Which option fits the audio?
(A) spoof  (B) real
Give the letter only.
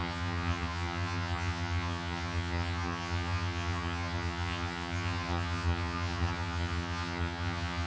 A